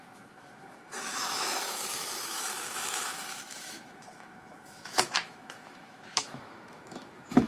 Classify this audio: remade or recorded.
remade